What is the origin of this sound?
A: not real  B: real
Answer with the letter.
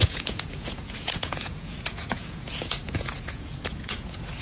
A